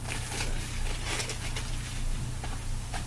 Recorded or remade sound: recorded